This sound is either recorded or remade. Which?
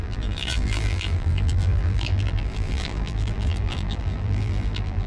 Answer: remade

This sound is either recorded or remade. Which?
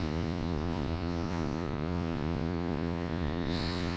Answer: remade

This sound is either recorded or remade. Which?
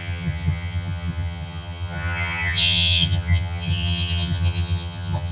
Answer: remade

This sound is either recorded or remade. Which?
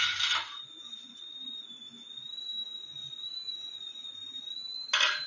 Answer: recorded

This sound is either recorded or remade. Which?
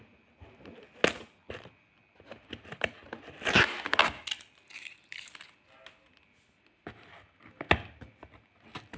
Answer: recorded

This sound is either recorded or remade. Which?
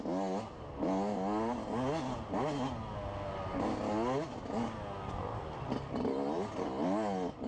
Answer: recorded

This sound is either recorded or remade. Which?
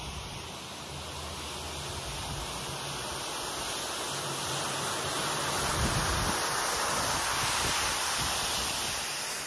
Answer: recorded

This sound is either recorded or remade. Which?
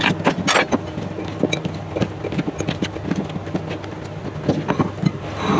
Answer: recorded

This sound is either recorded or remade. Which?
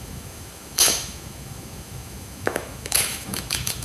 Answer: remade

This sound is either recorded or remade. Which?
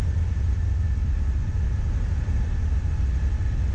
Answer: recorded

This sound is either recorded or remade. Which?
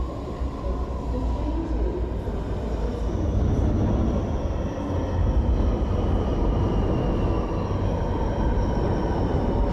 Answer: recorded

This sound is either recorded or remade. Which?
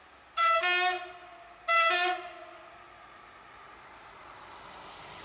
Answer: recorded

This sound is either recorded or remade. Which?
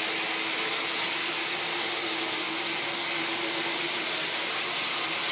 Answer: recorded